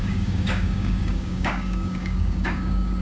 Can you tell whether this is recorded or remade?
remade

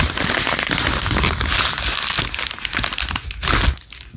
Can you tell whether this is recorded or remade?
recorded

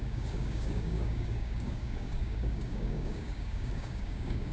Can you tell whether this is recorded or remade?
remade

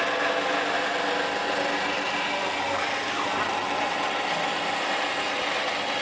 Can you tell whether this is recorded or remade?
recorded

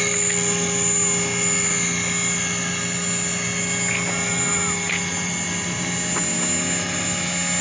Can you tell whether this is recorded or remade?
recorded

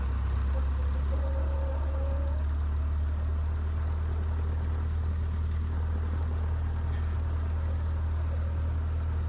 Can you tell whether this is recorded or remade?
recorded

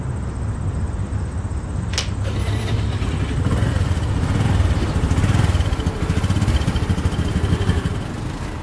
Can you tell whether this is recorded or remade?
recorded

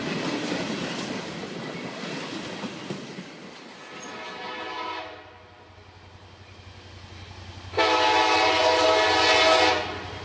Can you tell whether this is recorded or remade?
recorded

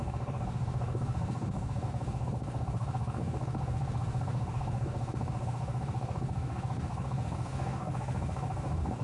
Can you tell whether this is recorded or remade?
remade